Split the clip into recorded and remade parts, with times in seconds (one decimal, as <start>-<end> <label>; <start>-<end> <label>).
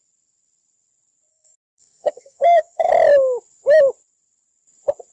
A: 0.0-1.3 recorded; 1.3-2.9 remade; 2.9-5.1 recorded